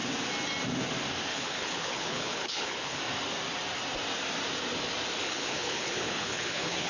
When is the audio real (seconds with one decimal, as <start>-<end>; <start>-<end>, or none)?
0.0-1.3; 3.0-5.2